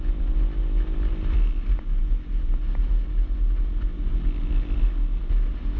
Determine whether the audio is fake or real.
real